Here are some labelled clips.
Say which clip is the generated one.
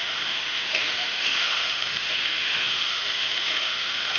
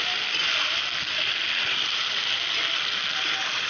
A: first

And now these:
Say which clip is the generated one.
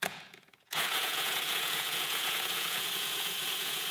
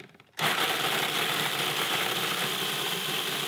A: first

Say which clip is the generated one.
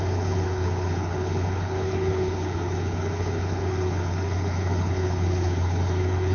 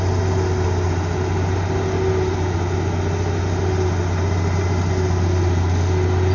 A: first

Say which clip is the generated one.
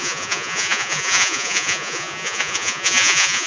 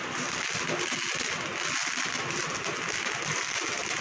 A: first